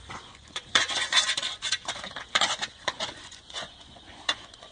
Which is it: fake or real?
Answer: fake